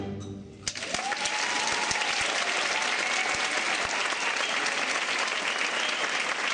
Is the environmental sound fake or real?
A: real